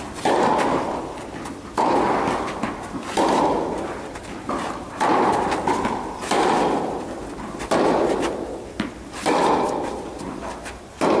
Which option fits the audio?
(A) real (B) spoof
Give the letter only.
A